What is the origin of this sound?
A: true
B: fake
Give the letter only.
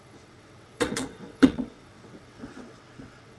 B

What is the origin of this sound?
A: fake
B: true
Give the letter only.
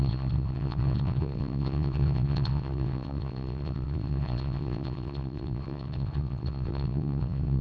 A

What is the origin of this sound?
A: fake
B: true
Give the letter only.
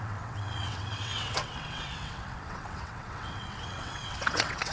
A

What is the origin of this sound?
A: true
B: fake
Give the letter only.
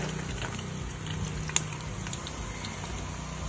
A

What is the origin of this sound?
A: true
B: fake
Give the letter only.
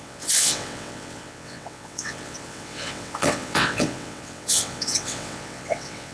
B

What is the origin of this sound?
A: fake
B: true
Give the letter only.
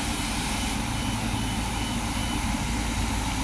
B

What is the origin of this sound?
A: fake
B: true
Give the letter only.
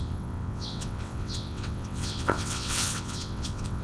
A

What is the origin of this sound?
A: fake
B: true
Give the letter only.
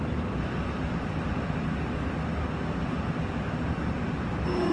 B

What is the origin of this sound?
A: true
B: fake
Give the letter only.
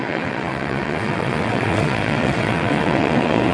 B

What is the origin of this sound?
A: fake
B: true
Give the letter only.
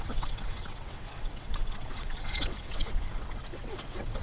A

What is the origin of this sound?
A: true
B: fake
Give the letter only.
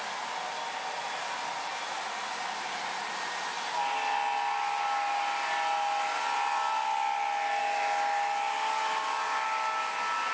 A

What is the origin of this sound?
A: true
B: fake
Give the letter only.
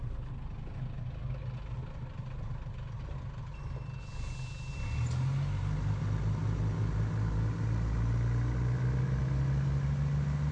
A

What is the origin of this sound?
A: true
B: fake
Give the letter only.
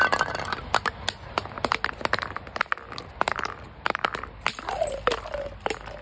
A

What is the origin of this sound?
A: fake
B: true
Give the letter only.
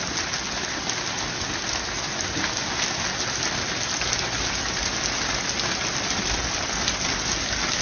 B